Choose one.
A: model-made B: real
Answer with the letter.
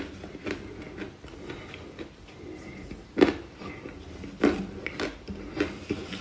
B